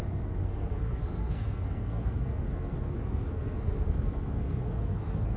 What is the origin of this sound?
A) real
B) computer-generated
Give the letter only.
B